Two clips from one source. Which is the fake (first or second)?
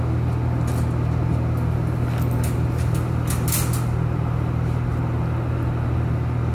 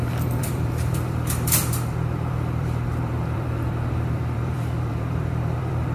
second